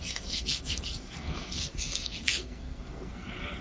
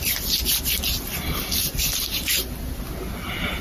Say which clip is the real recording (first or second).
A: second